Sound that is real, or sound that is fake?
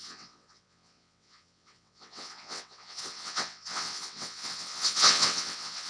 fake